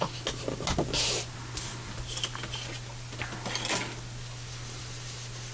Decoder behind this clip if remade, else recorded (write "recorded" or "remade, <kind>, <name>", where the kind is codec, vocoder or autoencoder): recorded